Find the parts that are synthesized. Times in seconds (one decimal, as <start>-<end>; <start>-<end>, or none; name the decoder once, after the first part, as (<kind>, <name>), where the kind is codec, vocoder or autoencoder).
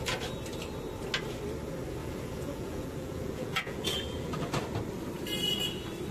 2.0-4.5 (vocoder, Vocos)